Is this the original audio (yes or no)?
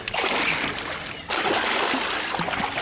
yes